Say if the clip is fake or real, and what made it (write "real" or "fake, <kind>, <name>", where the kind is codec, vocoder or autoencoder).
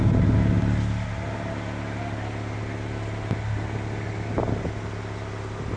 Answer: real